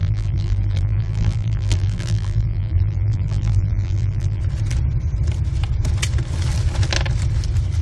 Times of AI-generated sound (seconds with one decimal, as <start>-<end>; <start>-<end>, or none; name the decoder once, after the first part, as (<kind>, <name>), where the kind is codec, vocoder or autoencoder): 0.0-4.4 (vocoder, BigVGAN v2)